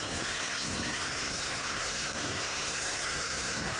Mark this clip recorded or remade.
remade